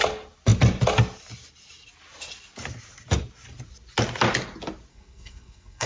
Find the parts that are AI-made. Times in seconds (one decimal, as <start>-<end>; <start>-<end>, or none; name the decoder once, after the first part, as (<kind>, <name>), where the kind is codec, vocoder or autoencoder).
4.9-5.9 (codec, SNAC)